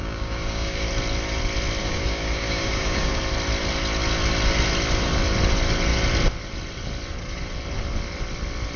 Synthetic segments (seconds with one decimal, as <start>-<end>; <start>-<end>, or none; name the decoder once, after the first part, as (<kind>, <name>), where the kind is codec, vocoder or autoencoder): 0.0-0.9 (codec, DAC); 1.8-3.2